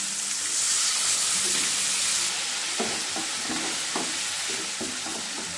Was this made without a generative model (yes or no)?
yes